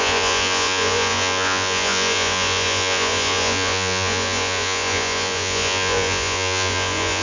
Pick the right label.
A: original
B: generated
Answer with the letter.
B